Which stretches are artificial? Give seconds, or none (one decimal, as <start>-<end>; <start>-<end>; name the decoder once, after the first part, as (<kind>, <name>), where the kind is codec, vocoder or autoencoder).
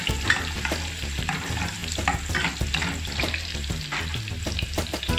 none